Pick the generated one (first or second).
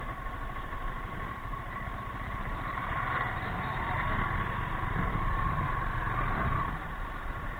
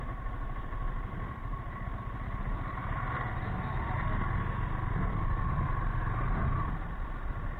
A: first